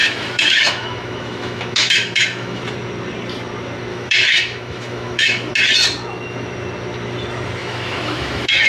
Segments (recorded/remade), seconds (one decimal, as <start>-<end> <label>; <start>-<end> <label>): 0.0-2.6 remade; 2.6-3.9 recorded; 3.9-5.5 remade; 5.5-7.6 recorded; 7.6-8.7 remade